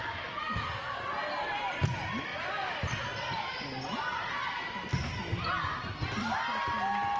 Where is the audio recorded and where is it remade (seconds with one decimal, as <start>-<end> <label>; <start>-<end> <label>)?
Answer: 0.0-7.2 recorded